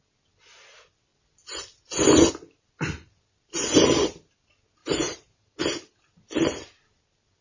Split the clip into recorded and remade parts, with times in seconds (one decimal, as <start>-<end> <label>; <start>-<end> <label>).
0.0-4.8 recorded; 4.8-6.0 remade; 6.0-7.4 recorded

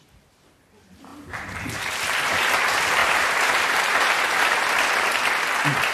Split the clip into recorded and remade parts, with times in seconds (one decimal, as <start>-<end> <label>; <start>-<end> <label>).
0.0-3.0 recorded; 3.0-4.8 remade; 4.8-5.9 recorded

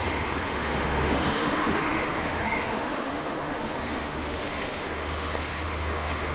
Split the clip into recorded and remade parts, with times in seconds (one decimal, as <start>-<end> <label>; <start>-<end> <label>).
0.0-6.3 remade

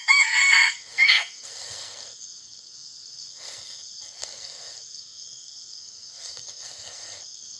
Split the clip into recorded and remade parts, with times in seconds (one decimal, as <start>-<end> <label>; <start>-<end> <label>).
0.0-7.6 remade

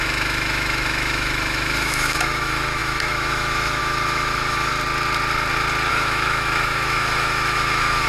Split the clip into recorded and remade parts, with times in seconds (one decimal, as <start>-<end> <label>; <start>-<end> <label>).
0.0-4.7 remade; 4.7-5.9 recorded; 5.9-8.1 remade

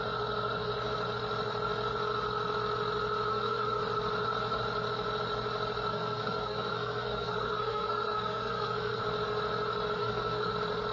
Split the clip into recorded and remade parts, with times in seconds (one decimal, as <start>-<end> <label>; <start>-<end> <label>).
0.0-3.3 recorded; 3.3-3.8 remade; 3.8-5.9 recorded; 5.9-9.0 remade; 9.0-10.0 recorded; 10.0-10.5 remade; 10.5-10.9 recorded